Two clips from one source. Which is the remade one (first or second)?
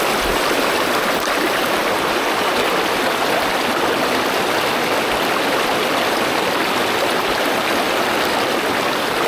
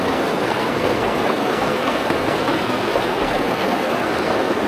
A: second